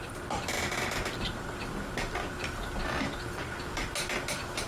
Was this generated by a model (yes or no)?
no